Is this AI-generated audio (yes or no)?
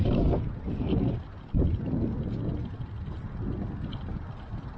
no